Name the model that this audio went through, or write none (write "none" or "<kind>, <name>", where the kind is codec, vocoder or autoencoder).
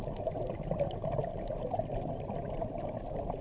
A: none